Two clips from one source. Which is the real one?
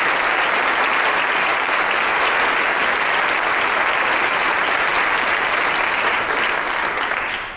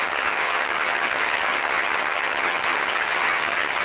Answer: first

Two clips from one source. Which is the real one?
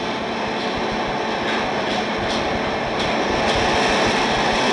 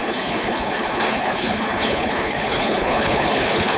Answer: first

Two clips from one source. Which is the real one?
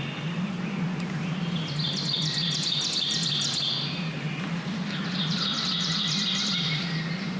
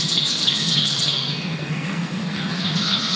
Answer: first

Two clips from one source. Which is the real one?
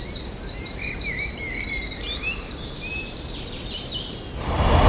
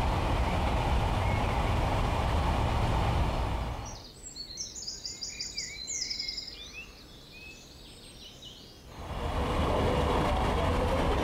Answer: second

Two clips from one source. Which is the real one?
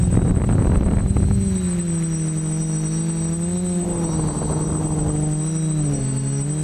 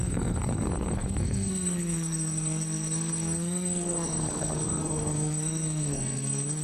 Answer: first